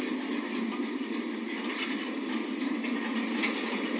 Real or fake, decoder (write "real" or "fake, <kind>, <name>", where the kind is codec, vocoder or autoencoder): real